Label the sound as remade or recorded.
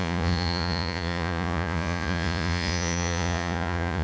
remade